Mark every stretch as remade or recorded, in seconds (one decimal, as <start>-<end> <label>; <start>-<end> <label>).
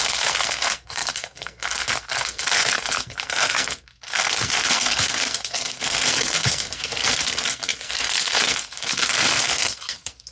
0.0-10.3 remade